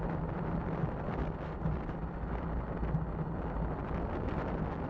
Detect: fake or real real